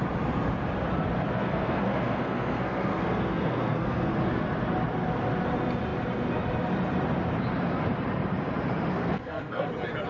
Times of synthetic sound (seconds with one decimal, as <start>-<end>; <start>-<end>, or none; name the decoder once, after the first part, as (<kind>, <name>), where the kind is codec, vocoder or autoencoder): 1.3-4.1 (codec, SNAC); 8.9-9.7